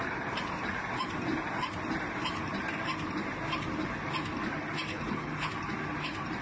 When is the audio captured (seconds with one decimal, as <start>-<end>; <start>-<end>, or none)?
0.0-4.9; 5.5-6.4